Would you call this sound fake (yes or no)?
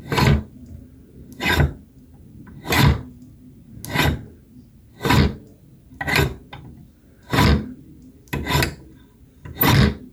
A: no